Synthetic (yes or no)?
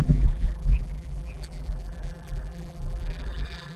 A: yes